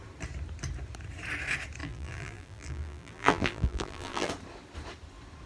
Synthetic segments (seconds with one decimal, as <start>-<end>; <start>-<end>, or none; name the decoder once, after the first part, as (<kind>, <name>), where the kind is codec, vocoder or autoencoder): 1.8-4.3 (vocoder, BigVGAN v2)